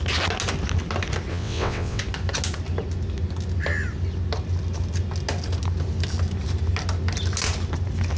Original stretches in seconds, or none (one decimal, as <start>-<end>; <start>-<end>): 0.0-1.3; 2.0-8.2